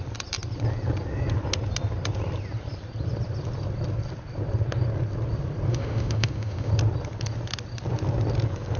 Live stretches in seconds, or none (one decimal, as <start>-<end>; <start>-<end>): 0.0-5.7; 6.7-8.8